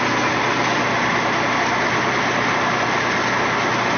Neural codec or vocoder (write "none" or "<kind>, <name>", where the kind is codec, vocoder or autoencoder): none